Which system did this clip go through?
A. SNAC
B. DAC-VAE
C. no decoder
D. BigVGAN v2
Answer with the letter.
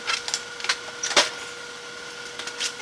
C